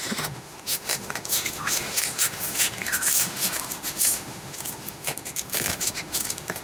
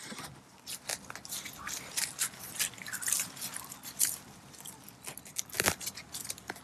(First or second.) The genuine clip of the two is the second